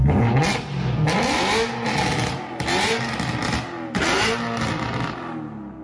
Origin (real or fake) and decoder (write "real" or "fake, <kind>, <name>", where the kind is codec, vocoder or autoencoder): real